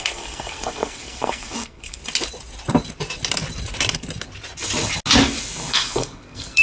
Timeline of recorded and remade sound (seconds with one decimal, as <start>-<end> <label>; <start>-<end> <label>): 0.0-2.0 remade; 2.0-5.7 recorded; 5.7-6.6 remade